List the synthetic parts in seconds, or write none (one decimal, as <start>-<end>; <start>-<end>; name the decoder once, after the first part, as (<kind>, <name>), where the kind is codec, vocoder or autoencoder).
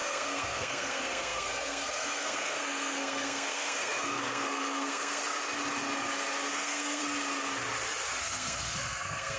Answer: 0.0-5.2 (codec, SNAC); 6.5-7.0; 8.2-9.4